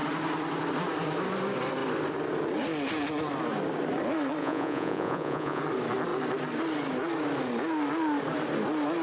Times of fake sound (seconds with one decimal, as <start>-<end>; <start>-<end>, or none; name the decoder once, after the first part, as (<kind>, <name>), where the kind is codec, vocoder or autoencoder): 4.4-5.6 (vocoder, Vocos)